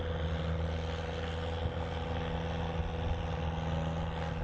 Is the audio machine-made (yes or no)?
no